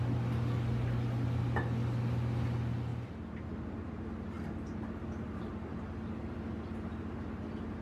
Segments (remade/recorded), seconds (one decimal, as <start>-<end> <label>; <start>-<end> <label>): 0.0-7.8 recorded